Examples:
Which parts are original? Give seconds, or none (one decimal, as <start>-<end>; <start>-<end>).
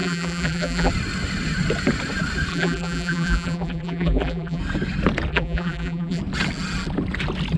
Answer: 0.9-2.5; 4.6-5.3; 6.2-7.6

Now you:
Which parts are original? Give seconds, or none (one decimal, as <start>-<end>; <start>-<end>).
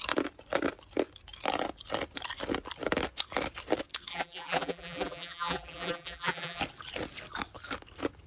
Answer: 0.0-4.1; 6.6-8.3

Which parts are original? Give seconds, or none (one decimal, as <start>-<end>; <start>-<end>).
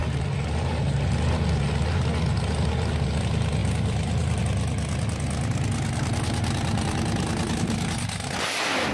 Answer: 0.0-3.6; 4.4-8.9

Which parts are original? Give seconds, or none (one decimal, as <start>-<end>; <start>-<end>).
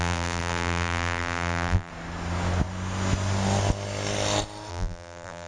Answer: 1.9-4.7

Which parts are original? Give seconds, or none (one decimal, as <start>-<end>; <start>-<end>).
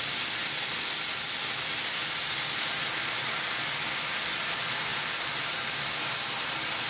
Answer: 0.4-4.4; 4.9-5.4